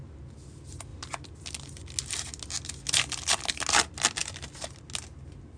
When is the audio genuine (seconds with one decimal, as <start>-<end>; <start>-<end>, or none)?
0.0-5.6